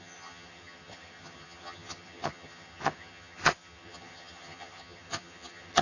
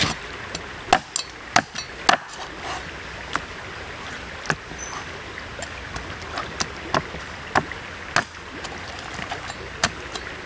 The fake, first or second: first